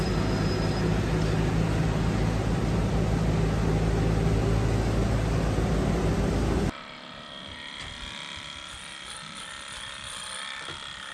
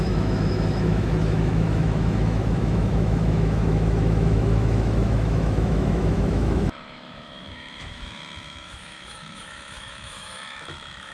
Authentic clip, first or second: first